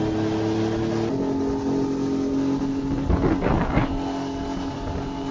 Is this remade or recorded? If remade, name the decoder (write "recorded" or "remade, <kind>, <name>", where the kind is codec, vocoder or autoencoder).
recorded